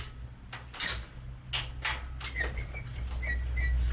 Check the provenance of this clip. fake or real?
real